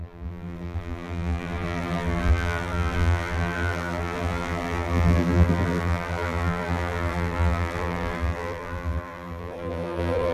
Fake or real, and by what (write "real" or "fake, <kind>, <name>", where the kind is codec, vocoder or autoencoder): fake, vocoder, BigVGAN v2